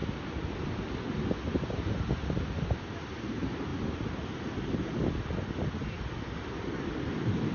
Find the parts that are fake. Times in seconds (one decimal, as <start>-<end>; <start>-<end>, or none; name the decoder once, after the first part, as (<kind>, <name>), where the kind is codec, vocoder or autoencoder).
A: none